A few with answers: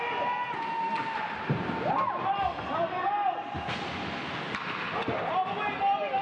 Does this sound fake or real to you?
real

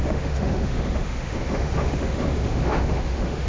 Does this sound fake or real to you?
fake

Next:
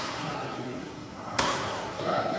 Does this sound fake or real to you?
fake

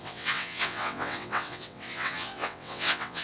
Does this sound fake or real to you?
fake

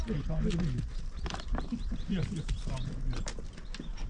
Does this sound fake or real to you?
real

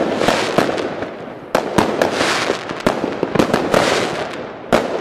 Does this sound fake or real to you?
real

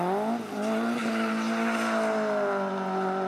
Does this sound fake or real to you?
real